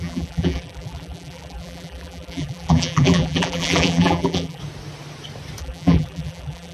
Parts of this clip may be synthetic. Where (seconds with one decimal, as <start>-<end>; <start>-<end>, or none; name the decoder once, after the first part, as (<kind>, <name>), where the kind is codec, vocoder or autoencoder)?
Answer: 0.0-4.6 (vocoder, BigVGAN v2); 5.6-6.7